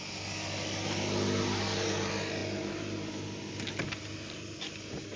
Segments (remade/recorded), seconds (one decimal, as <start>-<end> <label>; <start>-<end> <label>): 0.0-5.2 recorded